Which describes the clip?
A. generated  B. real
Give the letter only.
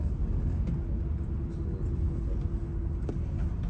B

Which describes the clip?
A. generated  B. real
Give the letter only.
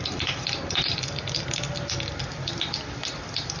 B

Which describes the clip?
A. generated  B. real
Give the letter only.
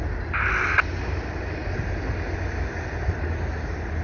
B